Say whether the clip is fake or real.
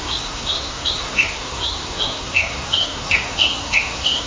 fake